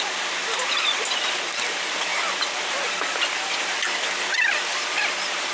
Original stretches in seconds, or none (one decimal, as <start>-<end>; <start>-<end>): 0.0-5.5